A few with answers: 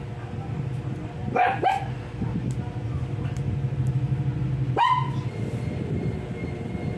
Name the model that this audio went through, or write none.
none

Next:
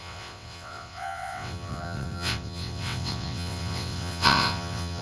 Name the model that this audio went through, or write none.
vocoder, WaveNeXt